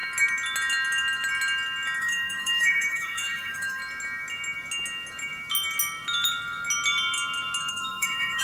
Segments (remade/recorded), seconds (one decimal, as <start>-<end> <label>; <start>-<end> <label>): 0.0-2.0 recorded; 2.0-3.8 remade; 3.8-7.7 recorded; 7.7-8.4 remade